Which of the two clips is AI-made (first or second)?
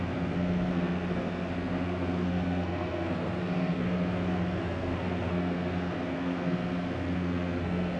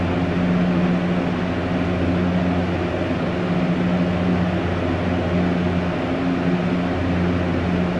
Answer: first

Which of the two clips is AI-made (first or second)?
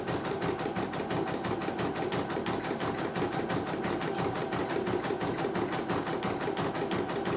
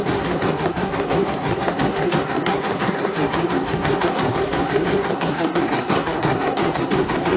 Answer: second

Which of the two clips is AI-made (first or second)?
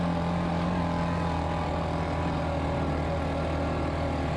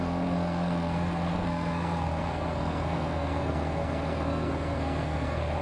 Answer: second